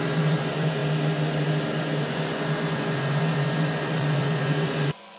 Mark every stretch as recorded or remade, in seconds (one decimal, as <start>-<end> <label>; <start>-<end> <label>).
0.0-0.8 remade; 0.8-1.8 recorded; 1.8-5.2 remade